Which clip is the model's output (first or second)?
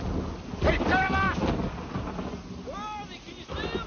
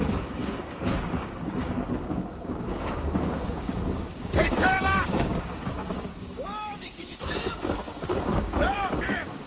second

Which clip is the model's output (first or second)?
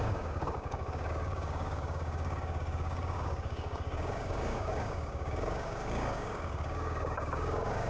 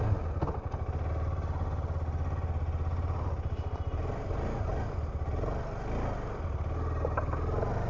first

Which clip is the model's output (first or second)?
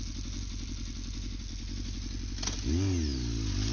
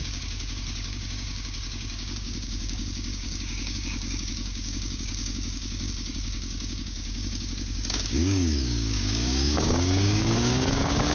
second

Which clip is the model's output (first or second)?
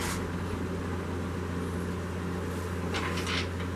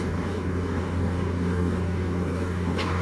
second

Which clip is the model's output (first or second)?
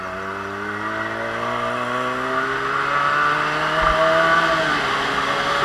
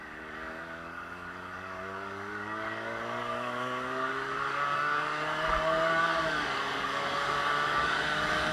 second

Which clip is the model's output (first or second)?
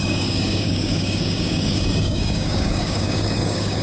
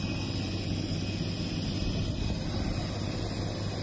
first